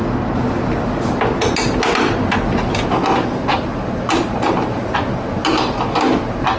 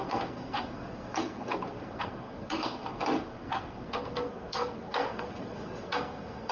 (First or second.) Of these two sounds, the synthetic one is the second